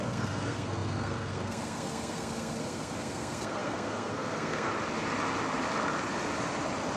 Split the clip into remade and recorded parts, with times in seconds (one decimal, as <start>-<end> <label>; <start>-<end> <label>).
0.0-4.7 remade; 4.7-7.0 recorded